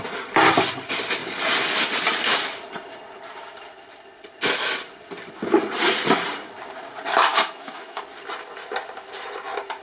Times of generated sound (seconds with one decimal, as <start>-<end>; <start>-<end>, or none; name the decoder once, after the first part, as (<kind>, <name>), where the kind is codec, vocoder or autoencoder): 7.3-8.0 (autoencoder, DAC-VAE)